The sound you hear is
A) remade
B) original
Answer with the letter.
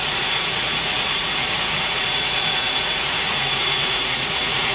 A